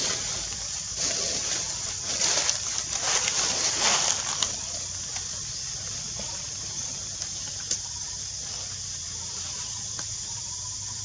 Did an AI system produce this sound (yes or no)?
no